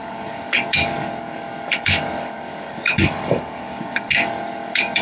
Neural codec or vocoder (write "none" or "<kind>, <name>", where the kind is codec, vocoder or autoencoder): codec, DAC